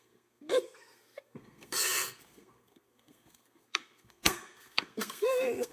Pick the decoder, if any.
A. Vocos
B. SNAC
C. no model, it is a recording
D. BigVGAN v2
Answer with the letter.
B